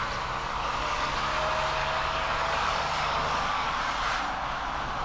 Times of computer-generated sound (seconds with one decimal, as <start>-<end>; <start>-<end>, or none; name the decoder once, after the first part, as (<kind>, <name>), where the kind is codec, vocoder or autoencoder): 0.5-1.1 (codec, DAC); 1.8-3.8